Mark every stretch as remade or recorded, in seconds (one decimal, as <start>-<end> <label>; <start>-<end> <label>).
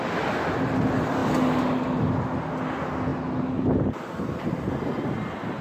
0.0-5.6 recorded